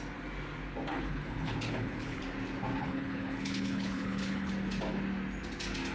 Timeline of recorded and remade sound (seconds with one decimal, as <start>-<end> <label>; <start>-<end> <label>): 0.0-0.9 recorded; 0.9-2.2 remade; 2.2-2.8 recorded; 2.8-4.5 remade; 4.5-5.9 recorded